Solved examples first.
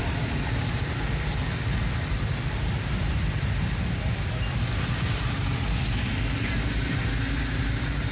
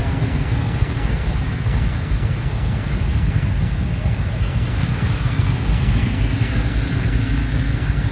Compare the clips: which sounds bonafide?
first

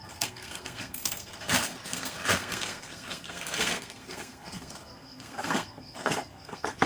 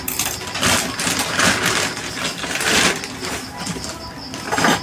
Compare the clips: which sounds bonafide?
second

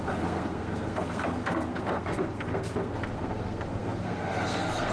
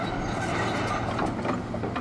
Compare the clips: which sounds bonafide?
second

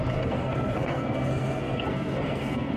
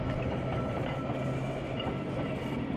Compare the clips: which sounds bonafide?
second